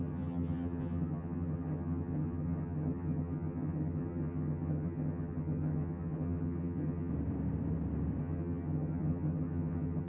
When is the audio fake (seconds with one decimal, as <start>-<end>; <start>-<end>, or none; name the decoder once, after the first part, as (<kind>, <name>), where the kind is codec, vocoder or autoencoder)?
0.0-7.1 (vocoder, HiFi-GAN); 8.2-10.1